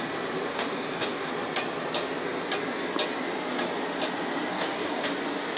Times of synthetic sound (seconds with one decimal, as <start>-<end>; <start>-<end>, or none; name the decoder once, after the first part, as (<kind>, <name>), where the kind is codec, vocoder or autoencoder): 0.5-1.3 (codec, DAC); 4.5-5.1